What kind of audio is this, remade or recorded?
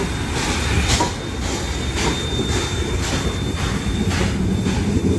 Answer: recorded